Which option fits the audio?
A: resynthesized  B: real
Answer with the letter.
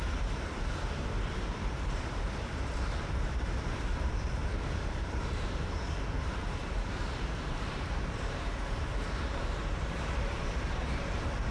A